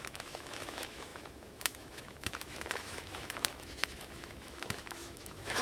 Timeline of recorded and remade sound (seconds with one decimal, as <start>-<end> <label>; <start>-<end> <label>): 0.0-5.6 remade